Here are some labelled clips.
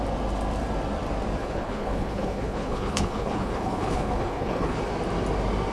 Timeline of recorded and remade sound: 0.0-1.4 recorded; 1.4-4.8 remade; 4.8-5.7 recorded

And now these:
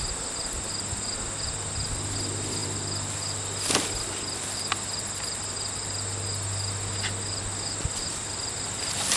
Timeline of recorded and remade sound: 0.0-9.2 recorded

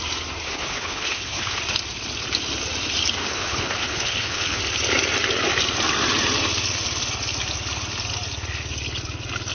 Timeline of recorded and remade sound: 0.0-0.4 recorded; 0.4-1.6 remade; 1.6-3.2 recorded; 3.2-4.6 remade; 4.6-9.5 recorded

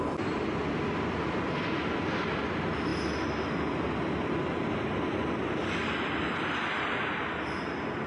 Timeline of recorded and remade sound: 0.0-8.1 recorded